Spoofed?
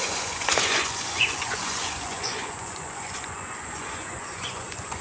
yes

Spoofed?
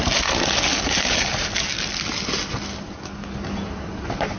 no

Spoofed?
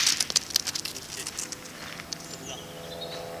no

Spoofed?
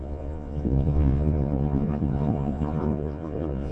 yes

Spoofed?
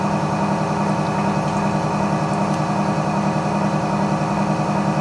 no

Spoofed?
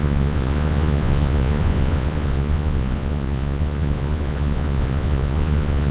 yes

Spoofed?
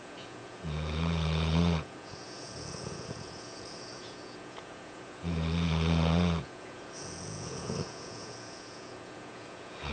yes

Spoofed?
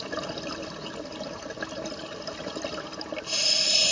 no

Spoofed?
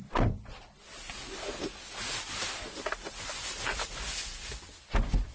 no